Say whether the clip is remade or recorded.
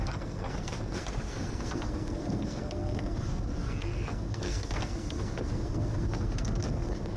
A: remade